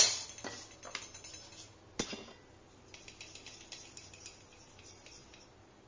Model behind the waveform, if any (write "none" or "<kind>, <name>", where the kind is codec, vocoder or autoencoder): none